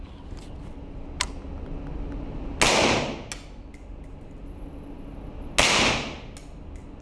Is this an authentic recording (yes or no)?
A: yes